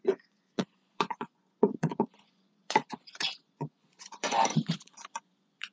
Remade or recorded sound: remade